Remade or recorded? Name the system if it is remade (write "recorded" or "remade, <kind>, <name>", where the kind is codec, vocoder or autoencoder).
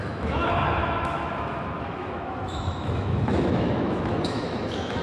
remade, autoencoder, DAC-VAE